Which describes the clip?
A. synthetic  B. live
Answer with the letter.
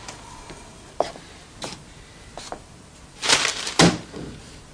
B